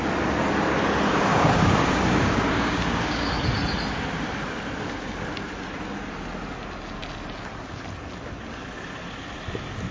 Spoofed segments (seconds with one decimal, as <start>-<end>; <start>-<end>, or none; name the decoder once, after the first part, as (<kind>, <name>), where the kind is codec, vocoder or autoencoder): 1.3-3.3 (codec, DAC)